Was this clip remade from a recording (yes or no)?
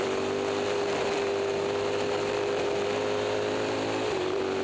no